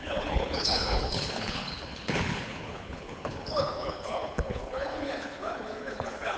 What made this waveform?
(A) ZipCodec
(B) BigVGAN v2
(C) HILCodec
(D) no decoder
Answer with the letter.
C